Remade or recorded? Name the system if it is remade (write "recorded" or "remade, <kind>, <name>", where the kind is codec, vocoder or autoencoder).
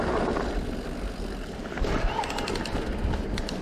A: recorded